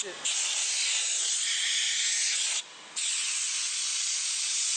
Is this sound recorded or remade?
recorded